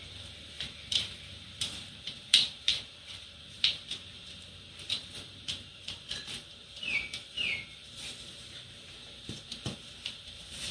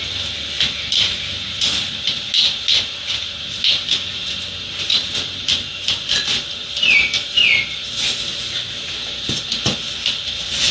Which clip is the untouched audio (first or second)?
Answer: second